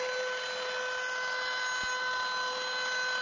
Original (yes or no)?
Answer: yes